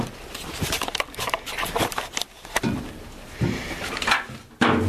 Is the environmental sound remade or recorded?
recorded